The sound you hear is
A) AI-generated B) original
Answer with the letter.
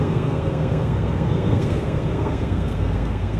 A